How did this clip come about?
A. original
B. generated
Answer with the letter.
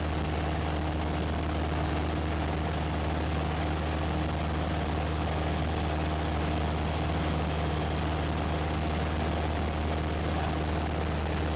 A